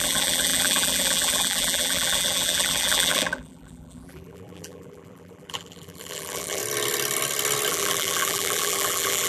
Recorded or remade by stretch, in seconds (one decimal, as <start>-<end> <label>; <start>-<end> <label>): 0.0-6.6 remade; 6.6-7.7 recorded; 7.7-9.3 remade